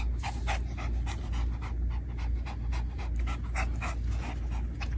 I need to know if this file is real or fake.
real